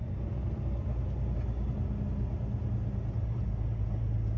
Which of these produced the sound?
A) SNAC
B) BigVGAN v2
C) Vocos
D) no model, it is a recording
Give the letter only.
D